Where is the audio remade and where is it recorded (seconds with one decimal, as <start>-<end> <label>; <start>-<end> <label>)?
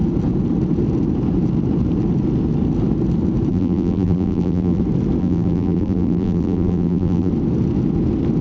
0.0-3.5 recorded; 3.5-4.8 remade; 4.8-5.2 recorded; 5.2-7.3 remade; 7.3-8.4 recorded